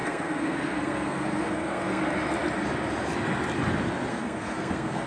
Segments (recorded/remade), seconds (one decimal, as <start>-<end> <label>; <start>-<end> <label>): 0.0-2.0 remade; 2.0-4.1 recorded; 4.1-5.1 remade